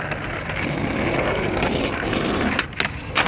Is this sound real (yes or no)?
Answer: yes